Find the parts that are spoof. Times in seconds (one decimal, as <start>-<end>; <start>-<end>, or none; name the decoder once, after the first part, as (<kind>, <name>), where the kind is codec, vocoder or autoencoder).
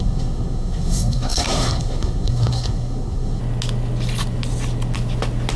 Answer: 0.0-3.4 (codec, SNAC)